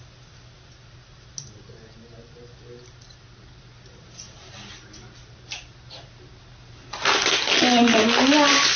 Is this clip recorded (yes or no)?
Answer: yes